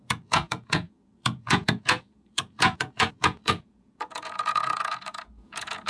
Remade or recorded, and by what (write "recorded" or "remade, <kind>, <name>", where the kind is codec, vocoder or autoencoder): remade, vocoder, Vocos